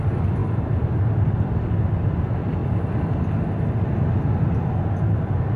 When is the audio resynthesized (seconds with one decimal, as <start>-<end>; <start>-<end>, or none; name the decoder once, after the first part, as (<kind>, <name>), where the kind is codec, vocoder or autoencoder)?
none